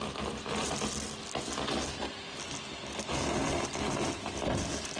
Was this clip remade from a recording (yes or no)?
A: no